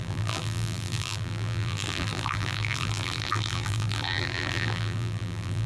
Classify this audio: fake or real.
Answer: fake